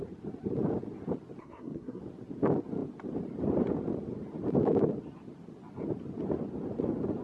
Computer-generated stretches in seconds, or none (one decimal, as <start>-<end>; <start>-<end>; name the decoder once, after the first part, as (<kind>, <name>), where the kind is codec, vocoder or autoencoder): 1.4-2.0 (codec, SNAC)